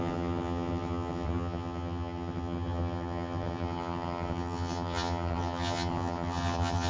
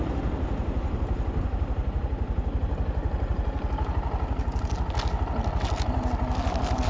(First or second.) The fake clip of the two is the first